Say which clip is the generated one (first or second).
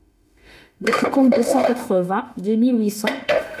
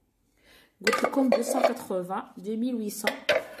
first